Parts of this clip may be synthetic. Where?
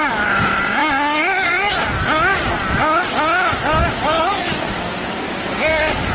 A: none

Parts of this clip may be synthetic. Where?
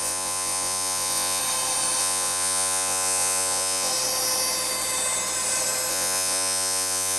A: 0.0-1.4; 2.0-3.9; 5.9-7.2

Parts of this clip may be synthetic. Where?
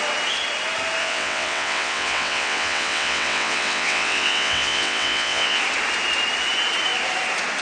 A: 1.0-5.6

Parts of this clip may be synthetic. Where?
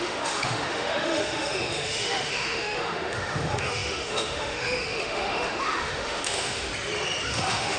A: 0.0-6.7; 7.3-7.8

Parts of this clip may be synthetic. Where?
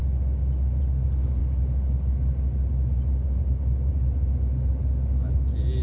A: none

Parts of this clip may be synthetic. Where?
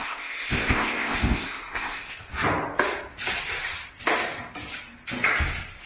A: 0.0-2.3